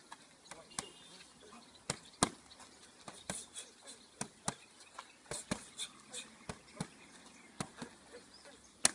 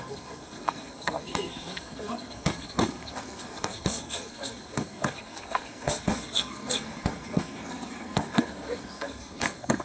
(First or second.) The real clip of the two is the first